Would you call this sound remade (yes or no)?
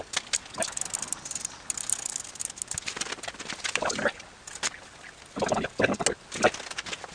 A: no